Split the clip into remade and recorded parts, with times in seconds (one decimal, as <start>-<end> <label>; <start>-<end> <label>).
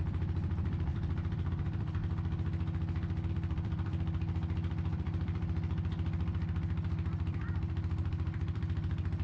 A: 0.0-2.0 remade; 2.0-3.3 recorded; 3.3-9.2 remade